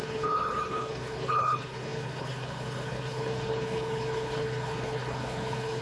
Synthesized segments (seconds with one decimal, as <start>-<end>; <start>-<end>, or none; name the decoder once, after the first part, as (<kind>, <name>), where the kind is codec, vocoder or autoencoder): 0.0-5.8 (codec, HILCodec)